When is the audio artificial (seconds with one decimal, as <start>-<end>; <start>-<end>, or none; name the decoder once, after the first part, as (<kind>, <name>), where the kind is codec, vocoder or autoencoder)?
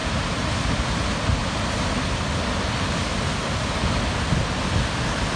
0.0-0.5 (vocoder, BigVGAN v2)